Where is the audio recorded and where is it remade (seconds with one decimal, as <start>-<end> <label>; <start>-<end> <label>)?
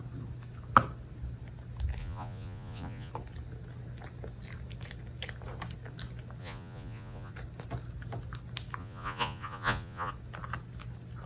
0.0-2.0 recorded; 2.0-3.1 remade; 3.1-6.4 recorded; 6.4-7.3 remade; 7.3-8.8 recorded; 8.8-10.1 remade; 10.1-11.3 recorded